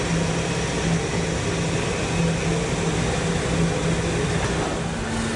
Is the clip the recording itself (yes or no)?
yes